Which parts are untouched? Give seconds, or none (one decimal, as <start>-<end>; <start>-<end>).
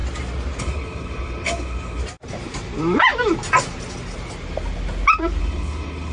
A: 0.0-0.6; 2.0-5.4